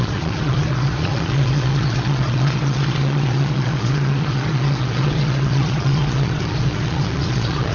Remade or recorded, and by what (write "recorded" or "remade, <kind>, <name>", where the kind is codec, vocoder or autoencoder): remade, vocoder, Vocos